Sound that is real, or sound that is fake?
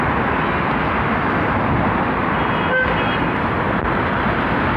real